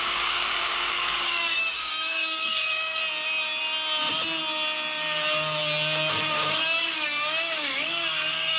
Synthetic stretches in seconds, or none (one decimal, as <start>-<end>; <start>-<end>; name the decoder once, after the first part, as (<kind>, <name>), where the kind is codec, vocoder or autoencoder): 0.0-3.0 (codec, DAC); 6.3-8.6